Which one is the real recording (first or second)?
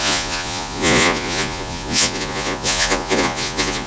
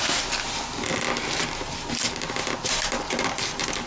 second